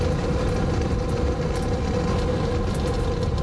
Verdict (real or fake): real